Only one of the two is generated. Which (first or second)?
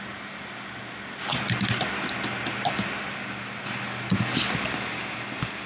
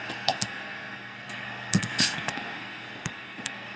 second